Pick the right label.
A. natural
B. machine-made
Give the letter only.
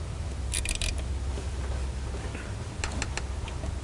A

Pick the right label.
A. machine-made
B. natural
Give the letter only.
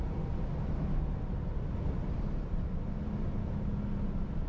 B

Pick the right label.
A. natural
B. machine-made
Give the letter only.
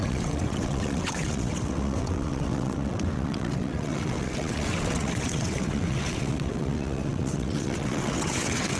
B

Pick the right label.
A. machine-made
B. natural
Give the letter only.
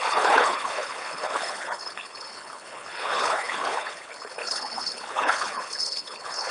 A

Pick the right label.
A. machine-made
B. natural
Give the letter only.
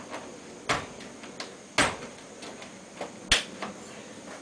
B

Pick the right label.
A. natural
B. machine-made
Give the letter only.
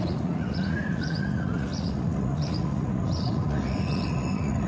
B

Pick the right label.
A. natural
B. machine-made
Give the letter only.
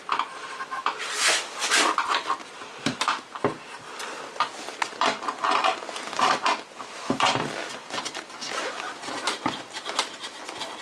B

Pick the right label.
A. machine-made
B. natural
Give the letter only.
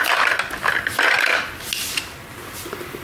B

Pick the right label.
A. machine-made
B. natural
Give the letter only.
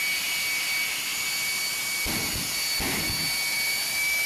B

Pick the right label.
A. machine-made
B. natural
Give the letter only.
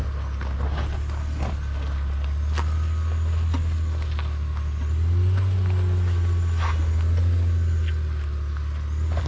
B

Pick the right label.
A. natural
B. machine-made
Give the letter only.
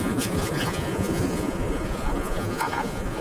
B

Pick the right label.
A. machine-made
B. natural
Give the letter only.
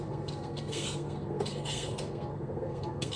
A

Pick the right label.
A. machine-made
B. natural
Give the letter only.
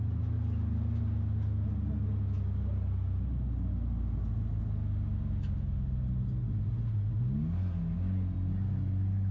B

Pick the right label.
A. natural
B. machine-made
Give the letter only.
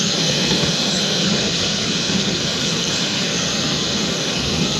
B